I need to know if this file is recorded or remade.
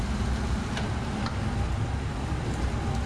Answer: recorded